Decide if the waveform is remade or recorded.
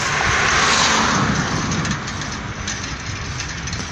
recorded